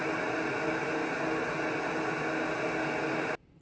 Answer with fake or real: real